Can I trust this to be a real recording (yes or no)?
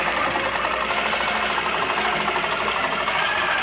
yes